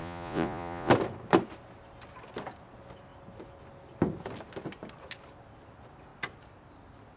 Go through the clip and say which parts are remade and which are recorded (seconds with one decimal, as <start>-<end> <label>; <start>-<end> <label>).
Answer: 0.0-0.9 remade; 0.9-7.2 recorded